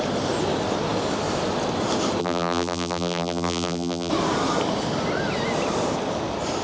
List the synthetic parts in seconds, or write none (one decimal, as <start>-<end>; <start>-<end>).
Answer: 2.2-4.1